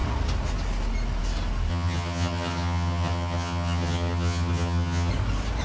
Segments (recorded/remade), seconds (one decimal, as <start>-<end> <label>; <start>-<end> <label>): 0.0-1.7 recorded; 1.7-5.1 remade; 5.1-5.6 recorded

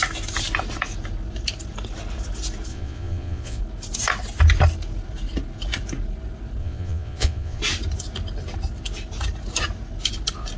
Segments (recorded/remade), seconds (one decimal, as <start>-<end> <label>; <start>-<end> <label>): 0.0-2.7 recorded; 2.7-3.6 remade; 3.6-6.6 recorded; 6.6-7.6 remade; 7.6-10.6 recorded

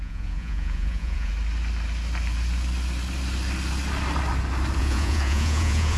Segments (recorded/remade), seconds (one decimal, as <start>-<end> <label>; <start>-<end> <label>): 0.0-1.3 remade; 1.3-4.8 recorded; 4.8-6.0 remade